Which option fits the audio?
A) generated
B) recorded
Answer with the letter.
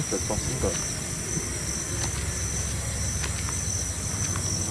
B